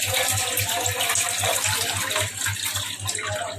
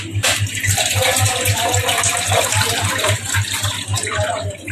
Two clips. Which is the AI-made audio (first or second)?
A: second